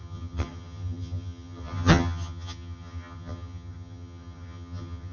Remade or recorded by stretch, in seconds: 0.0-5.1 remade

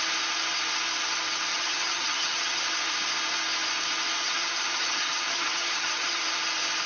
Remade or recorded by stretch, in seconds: 0.0-1.5 recorded; 1.5-2.6 remade; 2.6-4.2 recorded; 4.2-6.2 remade; 6.2-6.9 recorded

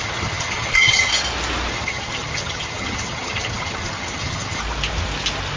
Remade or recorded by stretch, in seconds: 0.0-1.1 remade; 1.1-1.7 recorded; 1.7-4.6 remade; 4.6-5.6 recorded

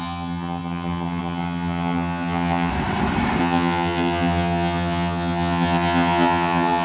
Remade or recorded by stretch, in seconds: 0.0-2.7 remade; 2.7-3.4 recorded; 3.4-6.8 remade

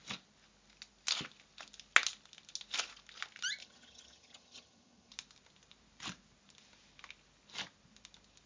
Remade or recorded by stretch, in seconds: 0.0-3.6 recorded; 3.6-5.1 remade; 5.1-8.5 recorded